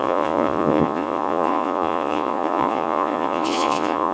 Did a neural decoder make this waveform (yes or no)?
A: yes